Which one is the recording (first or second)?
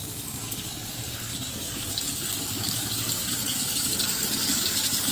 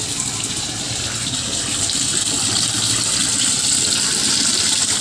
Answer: second